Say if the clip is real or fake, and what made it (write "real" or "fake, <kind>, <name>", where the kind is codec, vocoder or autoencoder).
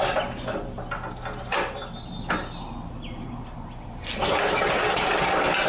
real